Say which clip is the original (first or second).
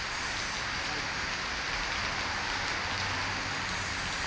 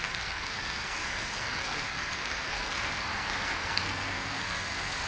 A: first